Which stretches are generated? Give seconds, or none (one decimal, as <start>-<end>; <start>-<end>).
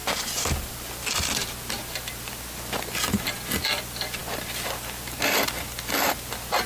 none